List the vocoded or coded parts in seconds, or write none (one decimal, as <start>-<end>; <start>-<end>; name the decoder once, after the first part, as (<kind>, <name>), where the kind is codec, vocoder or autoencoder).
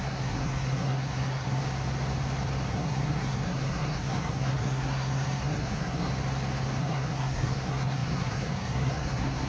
0.0-1.6 (codec, SNAC); 2.7-6.1; 6.8-9.5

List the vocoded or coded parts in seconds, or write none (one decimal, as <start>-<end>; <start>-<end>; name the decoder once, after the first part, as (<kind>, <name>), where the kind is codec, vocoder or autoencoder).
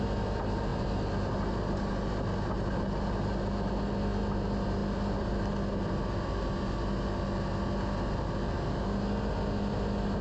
none